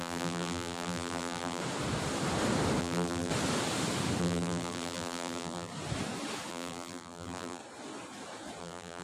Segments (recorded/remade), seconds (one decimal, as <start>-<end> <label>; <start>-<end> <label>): 0.0-1.6 remade; 1.6-2.8 recorded; 2.8-3.3 remade; 3.3-4.2 recorded; 4.2-5.7 remade; 5.7-6.5 recorded; 6.5-7.6 remade; 7.6-8.6 recorded; 8.6-9.0 remade